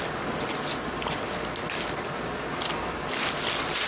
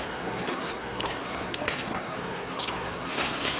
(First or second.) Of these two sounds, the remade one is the second